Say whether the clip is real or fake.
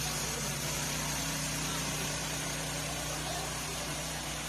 fake